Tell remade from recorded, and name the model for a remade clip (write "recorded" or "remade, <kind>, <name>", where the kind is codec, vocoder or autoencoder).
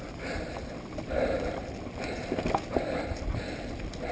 recorded